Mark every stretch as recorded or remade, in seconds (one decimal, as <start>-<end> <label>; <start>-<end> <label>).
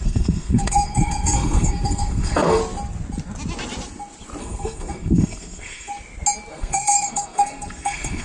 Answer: 0.0-2.6 remade; 2.6-4.4 recorded; 4.4-5.9 remade; 5.9-6.5 recorded; 6.5-8.2 remade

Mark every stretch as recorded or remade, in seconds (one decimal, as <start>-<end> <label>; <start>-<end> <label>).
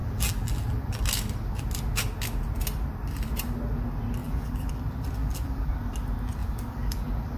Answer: 0.0-1.0 remade; 1.0-4.2 recorded; 4.2-4.7 remade; 4.7-5.2 recorded; 5.2-5.7 remade; 5.7-6.4 recorded; 6.4-7.4 remade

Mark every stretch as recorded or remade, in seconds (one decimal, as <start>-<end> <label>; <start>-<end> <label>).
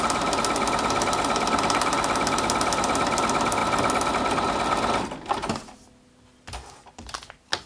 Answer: 0.0-7.7 recorded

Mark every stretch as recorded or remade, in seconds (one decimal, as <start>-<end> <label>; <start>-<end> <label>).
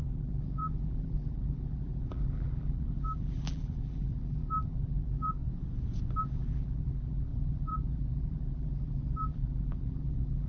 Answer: 0.0-5.4 remade; 5.4-6.2 recorded; 6.2-10.5 remade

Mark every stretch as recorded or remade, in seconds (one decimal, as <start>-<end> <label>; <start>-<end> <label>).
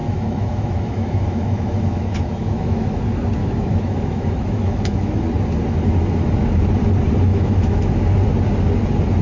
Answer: 0.0-3.0 remade; 3.0-3.4 recorded; 3.4-5.2 remade; 5.2-7.3 recorded; 7.3-8.0 remade; 8.0-9.2 recorded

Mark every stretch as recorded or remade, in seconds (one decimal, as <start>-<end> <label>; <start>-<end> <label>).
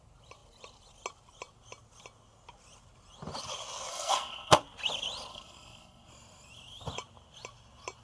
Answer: 0.0-3.9 recorded; 3.9-4.6 remade; 4.6-5.3 recorded; 5.3-6.1 remade; 6.1-8.0 recorded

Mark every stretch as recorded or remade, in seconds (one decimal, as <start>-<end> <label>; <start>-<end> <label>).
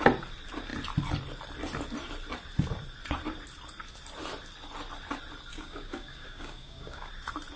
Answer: 0.0-5.5 recorded; 5.5-7.1 remade; 7.1-7.6 recorded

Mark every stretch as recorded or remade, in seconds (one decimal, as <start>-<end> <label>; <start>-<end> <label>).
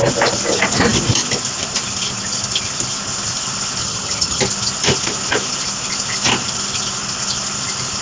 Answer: 0.0-3.8 recorded; 3.8-4.4 remade; 4.4-8.0 recorded